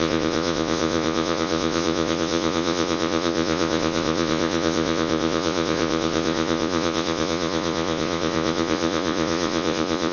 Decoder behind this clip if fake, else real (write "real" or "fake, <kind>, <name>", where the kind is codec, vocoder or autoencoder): fake, vocoder, Vocos